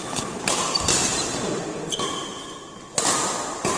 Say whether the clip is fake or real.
real